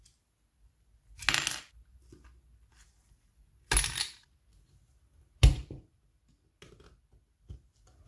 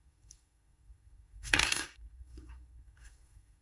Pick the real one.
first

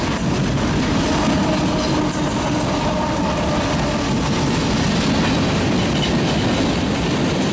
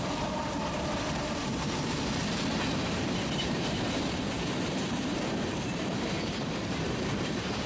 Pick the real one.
first